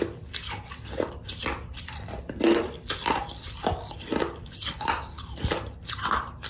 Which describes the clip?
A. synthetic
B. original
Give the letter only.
A